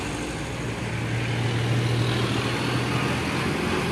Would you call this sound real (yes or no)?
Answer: yes